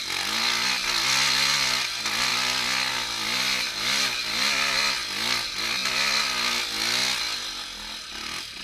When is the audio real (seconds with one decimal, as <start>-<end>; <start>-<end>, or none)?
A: 0.0-8.6